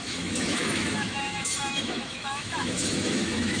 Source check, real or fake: fake